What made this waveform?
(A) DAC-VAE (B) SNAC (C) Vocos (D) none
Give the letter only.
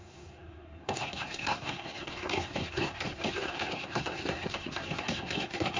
B